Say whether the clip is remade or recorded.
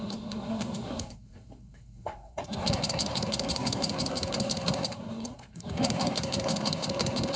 remade